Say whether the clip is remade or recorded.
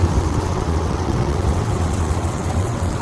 remade